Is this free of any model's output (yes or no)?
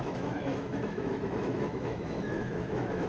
no